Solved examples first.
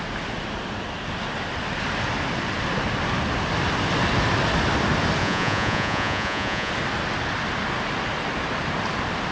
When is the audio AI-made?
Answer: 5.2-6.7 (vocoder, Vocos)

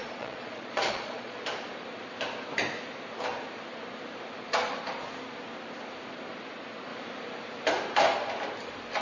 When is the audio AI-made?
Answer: 0.0-1.4 (vocoder, Vocos)

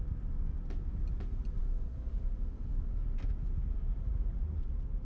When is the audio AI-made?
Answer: 3.9-4.6 (vocoder, Vocos)

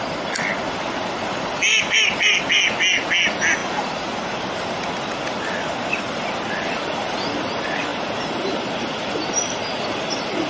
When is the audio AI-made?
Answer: none

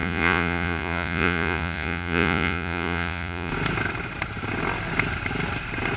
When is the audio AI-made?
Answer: 0.0-3.5 (vocoder, Vocos)

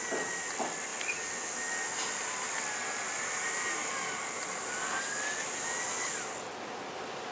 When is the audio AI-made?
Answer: none

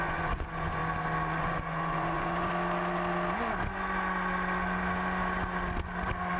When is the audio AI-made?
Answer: 0.0-0.8 (vocoder, Vocos); 1.4-2.5

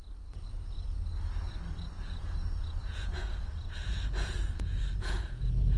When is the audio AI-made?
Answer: 1.9-5.8 (vocoder, Vocos)